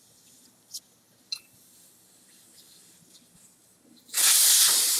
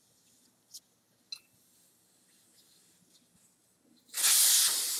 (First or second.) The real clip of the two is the second